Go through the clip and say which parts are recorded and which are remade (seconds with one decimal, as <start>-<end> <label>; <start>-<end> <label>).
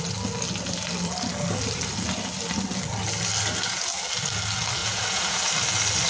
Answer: 0.0-4.8 recorded; 4.8-5.5 remade; 5.5-6.1 recorded